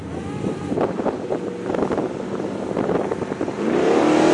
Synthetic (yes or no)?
no